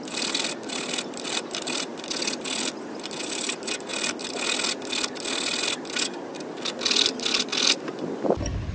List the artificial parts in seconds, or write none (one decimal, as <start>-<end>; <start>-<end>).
0.0-1.9; 3.3-3.9; 6.8-7.5